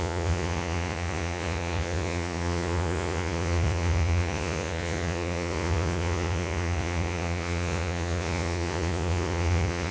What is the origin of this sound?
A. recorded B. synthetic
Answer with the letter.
B